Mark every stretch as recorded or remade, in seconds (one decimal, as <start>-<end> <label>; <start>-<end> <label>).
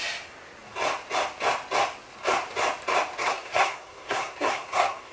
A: 0.0-3.2 recorded; 3.2-5.1 remade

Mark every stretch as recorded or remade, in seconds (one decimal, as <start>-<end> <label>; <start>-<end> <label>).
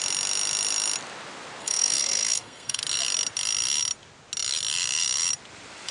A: 0.0-1.6 recorded; 1.6-2.8 remade; 2.8-5.9 recorded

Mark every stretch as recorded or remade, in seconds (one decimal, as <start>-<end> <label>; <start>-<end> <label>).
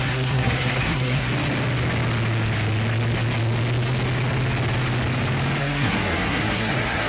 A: 0.0-1.3 remade; 1.3-5.6 recorded; 5.6-7.1 remade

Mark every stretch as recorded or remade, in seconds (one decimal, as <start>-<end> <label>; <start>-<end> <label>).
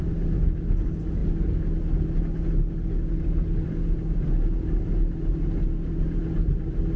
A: 0.0-7.0 recorded